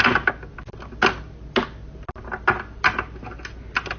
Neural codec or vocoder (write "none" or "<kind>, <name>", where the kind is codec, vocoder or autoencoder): none